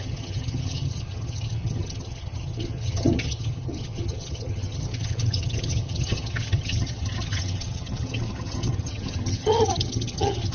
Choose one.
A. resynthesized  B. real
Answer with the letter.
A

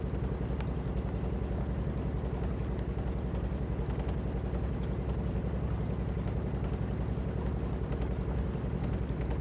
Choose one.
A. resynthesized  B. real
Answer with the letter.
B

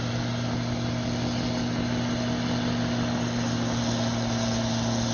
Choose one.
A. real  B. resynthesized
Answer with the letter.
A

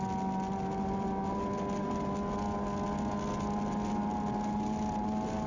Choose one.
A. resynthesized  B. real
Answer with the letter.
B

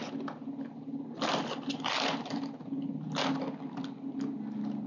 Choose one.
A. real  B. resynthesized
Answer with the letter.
A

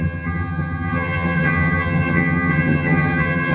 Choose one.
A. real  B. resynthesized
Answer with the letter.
B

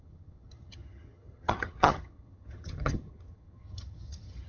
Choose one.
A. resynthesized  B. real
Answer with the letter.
A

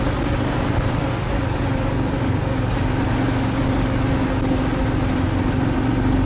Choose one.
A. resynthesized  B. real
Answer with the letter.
B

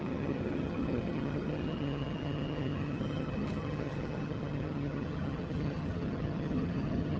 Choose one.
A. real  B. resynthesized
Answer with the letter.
B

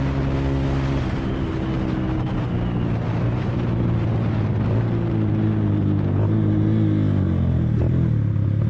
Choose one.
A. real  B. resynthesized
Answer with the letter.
A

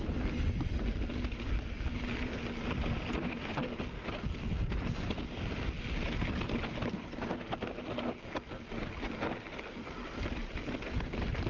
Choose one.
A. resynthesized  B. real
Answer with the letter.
B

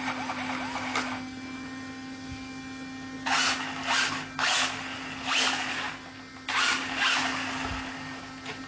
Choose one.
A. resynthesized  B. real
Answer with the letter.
B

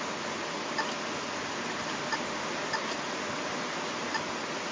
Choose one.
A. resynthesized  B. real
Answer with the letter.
B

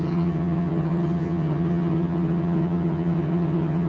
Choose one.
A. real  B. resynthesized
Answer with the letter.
B